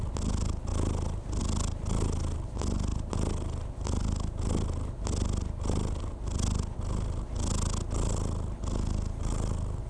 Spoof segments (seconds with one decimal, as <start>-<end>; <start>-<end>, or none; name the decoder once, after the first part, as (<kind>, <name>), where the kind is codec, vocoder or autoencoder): none